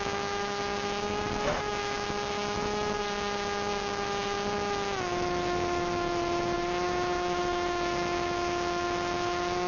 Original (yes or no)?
no